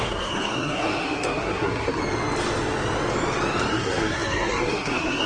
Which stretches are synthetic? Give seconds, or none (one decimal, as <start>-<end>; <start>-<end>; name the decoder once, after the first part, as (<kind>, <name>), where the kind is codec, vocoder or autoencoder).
0.0-2.0 (codec, SNAC); 3.7-5.3